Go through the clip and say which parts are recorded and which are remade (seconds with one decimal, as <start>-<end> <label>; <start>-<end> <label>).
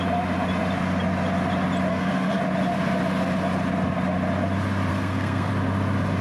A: 0.0-1.9 recorded; 1.9-2.4 remade; 2.4-4.9 recorded; 4.9-5.5 remade; 5.5-6.2 recorded